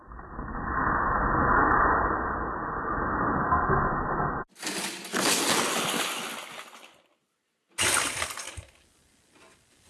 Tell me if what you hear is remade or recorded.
recorded